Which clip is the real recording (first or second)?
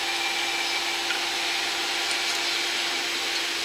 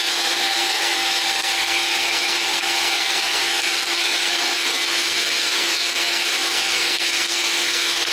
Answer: first